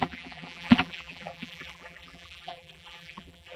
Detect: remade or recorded remade